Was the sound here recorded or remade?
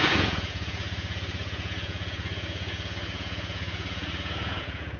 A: remade